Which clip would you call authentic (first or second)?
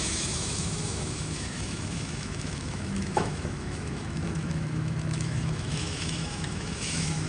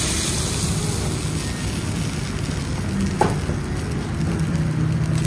second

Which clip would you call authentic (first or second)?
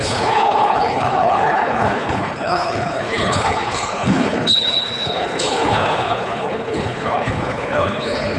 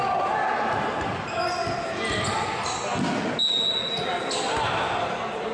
second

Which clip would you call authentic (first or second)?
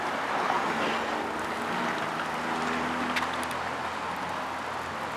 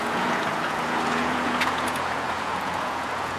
first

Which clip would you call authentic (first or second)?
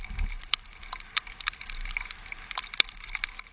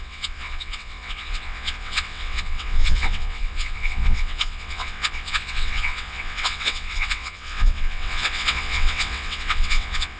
first